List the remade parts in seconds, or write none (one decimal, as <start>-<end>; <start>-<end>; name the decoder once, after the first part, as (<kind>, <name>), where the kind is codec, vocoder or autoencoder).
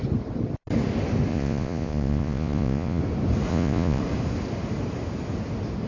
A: 1.3-3.0 (vocoder, Vocos); 3.5-4.0